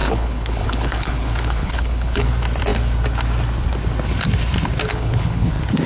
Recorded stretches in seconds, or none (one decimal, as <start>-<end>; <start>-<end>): 2.3-4.9; 5.5-5.9